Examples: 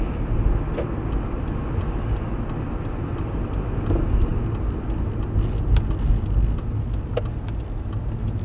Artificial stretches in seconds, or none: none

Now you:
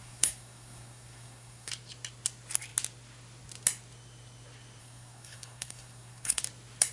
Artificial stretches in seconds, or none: 0.0-1.7 (codec, SNAC); 4.8-6.4

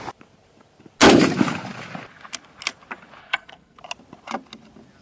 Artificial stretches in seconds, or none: 3.2-3.8 (codec, SNAC)

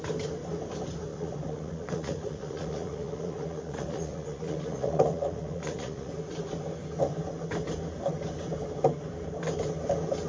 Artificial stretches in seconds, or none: 1.1-6.1 (vocoder, Vocos)

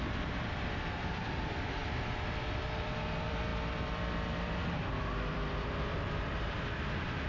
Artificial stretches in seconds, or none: 0.0-7.3 (vocoder, BigVGAN v2)

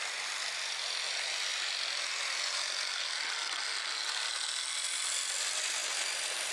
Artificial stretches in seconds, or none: none